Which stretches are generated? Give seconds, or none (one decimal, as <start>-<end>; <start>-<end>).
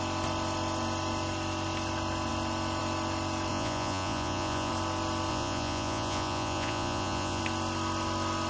3.5-4.7; 5.3-7.4